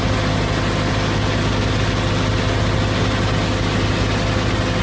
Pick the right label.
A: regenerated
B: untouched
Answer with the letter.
B